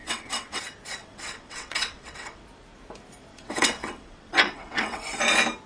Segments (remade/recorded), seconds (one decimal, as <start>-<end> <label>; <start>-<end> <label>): 0.0-0.6 remade; 0.6-1.0 recorded; 1.0-2.4 remade; 2.4-3.3 recorded; 3.3-5.0 remade; 5.0-5.7 recorded